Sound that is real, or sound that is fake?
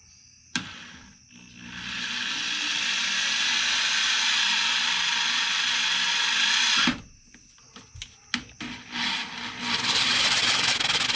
real